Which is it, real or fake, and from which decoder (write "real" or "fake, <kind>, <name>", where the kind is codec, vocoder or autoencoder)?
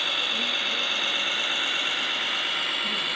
real